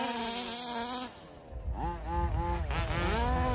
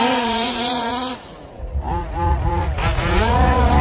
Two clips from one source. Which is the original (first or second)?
first